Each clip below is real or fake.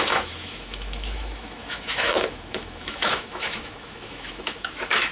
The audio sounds fake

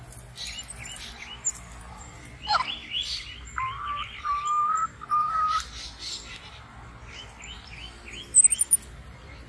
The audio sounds real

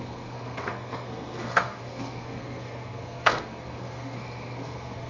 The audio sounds fake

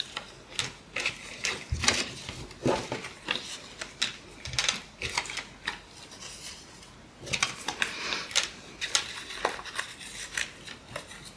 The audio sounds real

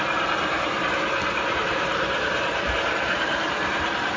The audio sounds fake